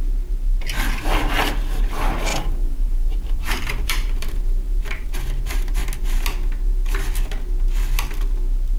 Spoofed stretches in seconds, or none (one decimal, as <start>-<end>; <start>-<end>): 2.3-4.8